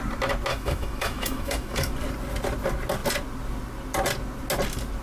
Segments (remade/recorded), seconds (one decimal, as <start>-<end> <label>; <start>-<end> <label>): 0.0-0.5 recorded; 0.5-1.9 remade; 1.9-5.0 recorded